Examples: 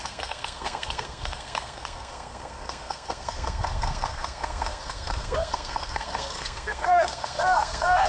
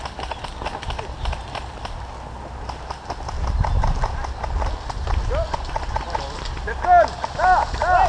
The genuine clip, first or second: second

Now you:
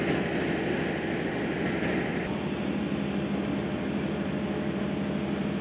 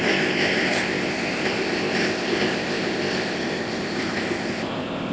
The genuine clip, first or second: first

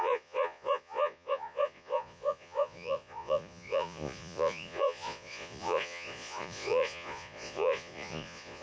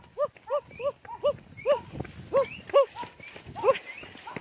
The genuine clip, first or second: second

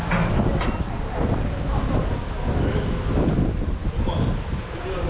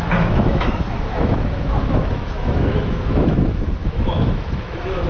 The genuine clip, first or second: first